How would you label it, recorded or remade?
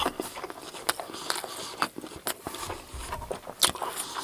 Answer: recorded